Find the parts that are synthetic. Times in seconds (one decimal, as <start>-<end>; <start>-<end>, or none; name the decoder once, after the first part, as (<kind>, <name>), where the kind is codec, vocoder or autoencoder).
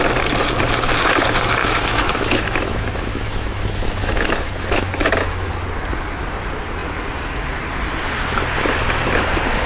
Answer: 1.6-5.5 (autoencoder, DAC-VAE)